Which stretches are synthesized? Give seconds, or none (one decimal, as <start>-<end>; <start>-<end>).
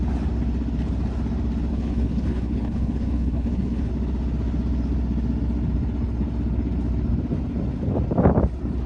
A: 1.7-3.9